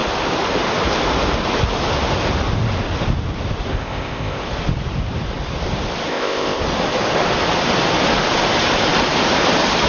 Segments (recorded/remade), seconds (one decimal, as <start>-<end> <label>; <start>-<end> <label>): 0.0-3.7 recorded; 3.7-4.4 remade; 4.4-6.1 recorded; 6.1-6.6 remade; 6.6-9.9 recorded